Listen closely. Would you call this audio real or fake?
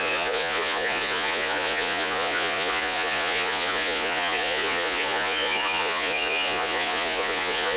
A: fake